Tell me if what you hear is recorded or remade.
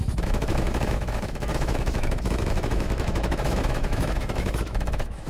remade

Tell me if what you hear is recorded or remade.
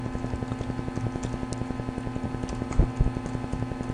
recorded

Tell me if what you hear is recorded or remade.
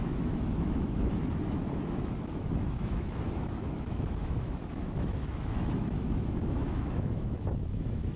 remade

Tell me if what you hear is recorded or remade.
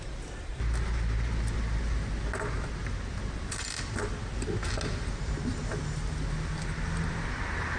recorded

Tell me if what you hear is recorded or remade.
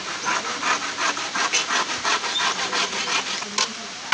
recorded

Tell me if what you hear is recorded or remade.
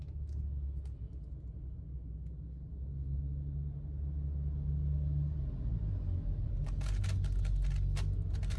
recorded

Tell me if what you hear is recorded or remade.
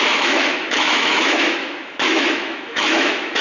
remade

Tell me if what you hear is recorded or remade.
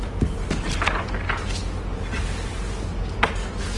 recorded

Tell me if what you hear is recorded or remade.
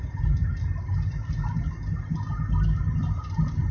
recorded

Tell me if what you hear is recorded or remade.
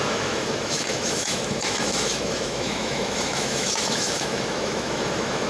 remade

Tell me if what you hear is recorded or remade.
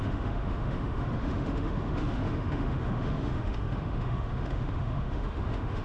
remade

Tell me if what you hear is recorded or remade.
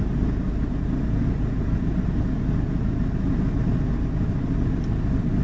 recorded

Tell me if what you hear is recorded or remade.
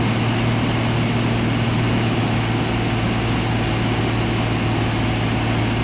recorded